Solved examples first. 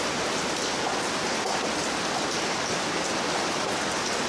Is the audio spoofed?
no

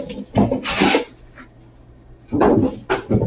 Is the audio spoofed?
no